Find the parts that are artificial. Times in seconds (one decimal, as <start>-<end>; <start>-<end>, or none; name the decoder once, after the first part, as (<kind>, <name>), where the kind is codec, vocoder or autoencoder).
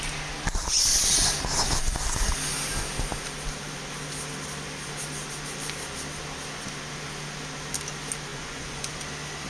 8.3-8.9 (vocoder, Vocos)